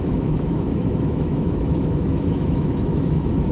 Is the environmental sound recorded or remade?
remade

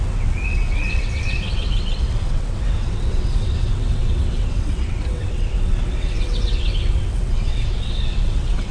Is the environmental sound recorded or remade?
remade